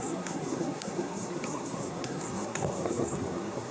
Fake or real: fake